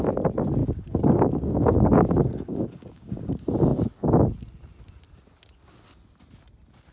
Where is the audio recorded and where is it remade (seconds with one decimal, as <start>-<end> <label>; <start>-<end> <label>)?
0.0-0.6 recorded; 0.6-3.3 remade; 3.3-6.9 recorded